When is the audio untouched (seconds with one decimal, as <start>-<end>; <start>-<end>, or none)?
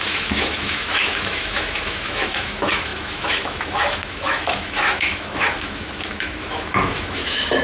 none